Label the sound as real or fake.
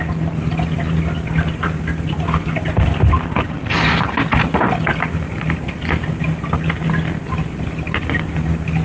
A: real